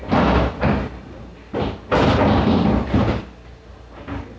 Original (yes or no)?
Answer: yes